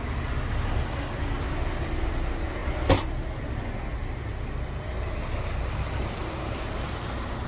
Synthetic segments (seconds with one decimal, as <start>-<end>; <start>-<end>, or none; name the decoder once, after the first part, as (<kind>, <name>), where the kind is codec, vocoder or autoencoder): none